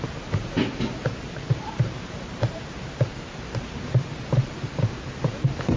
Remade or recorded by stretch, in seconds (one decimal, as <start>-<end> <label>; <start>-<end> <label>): 0.0-5.8 remade